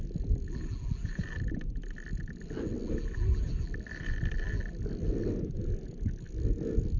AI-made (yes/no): no